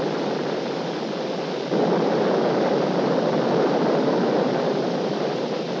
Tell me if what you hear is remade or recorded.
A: remade